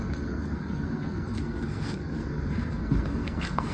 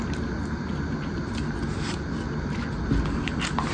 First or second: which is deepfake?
first